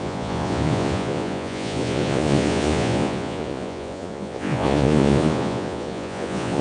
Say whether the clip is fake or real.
fake